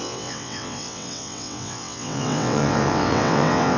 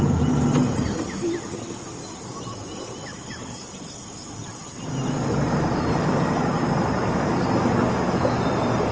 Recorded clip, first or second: second